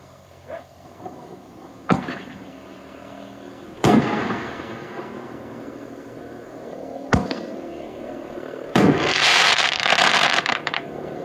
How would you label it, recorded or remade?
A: remade